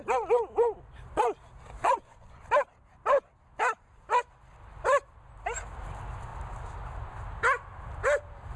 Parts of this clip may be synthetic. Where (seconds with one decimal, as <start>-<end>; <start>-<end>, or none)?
1.8-2.4